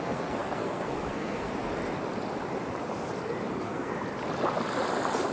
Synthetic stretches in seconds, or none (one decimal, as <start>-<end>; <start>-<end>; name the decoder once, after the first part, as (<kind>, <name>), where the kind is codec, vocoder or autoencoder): 0.0-1.5 (codec, SNAC); 3.5-3.9